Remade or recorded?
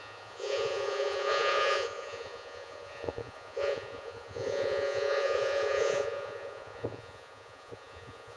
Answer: remade